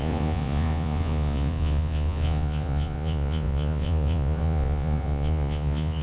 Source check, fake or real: fake